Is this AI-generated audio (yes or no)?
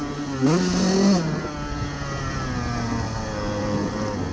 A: no